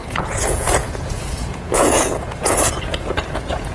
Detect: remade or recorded remade